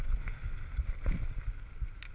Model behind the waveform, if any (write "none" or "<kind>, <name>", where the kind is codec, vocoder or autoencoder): none